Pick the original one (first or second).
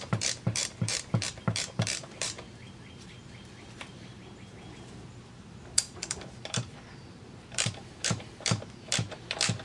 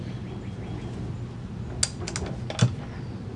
second